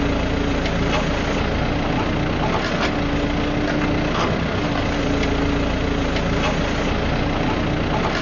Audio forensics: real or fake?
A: real